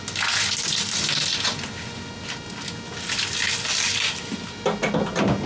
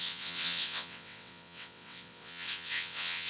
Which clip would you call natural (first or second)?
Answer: first